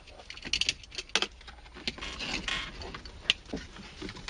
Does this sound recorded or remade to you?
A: recorded